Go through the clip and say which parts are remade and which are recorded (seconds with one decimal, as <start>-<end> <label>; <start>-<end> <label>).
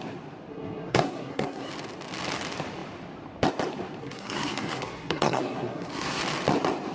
0.0-0.5 recorded; 0.5-1.7 remade; 1.7-4.0 recorded; 4.0-6.2 remade; 6.2-6.9 recorded